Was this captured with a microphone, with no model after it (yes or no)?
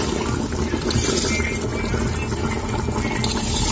yes